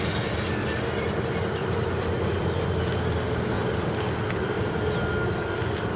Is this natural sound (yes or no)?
yes